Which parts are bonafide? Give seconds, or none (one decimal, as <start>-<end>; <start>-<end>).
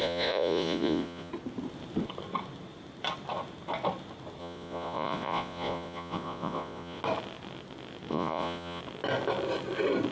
1.3-4.4; 7.0-8.1; 8.8-10.1